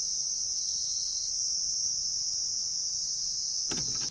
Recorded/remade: recorded